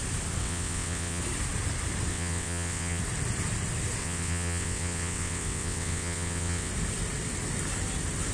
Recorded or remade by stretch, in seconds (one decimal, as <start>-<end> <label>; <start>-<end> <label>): 0.0-0.4 recorded; 0.4-1.2 remade; 1.2-2.1 recorded; 2.1-3.0 remade; 3.0-4.0 recorded; 4.0-6.7 remade; 6.7-8.3 recorded